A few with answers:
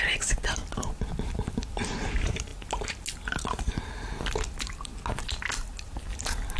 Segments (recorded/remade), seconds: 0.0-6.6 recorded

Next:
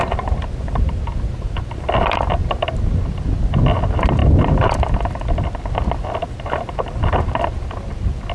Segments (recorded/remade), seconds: 0.0-8.3 recorded

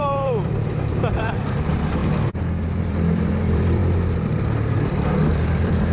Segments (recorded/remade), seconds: 0.0-2.0 remade; 2.0-2.8 recorded; 2.8-3.8 remade; 3.8-4.4 recorded; 4.4-5.9 remade

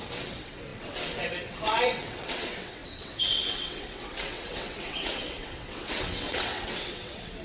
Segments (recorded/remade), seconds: 0.0-7.4 remade

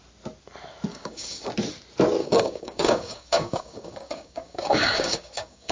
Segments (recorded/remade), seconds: 0.0-0.9 recorded; 0.9-1.5 remade; 1.5-2.2 recorded; 2.2-5.7 remade

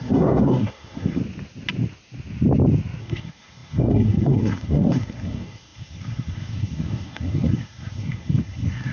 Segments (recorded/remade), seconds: 0.0-1.2 remade; 1.2-3.0 recorded; 3.0-8.9 remade

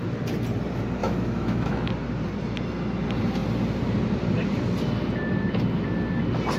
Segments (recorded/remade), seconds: 0.0-1.0 recorded; 1.0-1.9 remade; 1.9-6.6 recorded